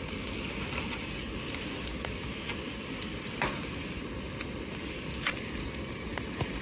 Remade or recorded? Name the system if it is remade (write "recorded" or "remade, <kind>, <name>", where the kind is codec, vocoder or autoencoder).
recorded